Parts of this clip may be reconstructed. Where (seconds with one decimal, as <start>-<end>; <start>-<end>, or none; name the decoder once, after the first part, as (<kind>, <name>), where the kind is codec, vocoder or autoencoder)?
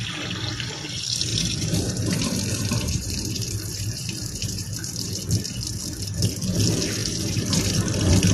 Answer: 1.3-5.1 (vocoder, BigVGAN v2); 7.0-7.7